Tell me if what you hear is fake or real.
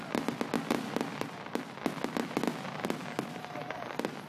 real